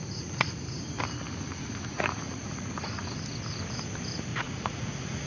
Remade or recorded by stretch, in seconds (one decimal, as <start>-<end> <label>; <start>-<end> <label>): 0.0-0.5 remade; 0.5-1.5 recorded; 1.5-3.0 remade; 3.0-4.3 recorded; 4.3-5.3 remade